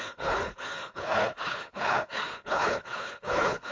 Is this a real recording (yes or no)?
no